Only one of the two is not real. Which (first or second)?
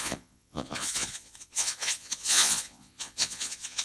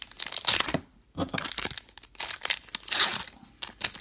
first